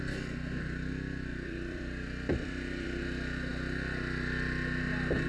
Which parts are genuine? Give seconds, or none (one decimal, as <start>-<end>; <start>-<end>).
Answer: 0.0-1.3; 3.0-5.3